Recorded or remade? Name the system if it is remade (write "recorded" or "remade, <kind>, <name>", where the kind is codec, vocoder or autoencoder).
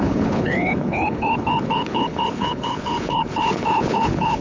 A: remade, codec, HILCodec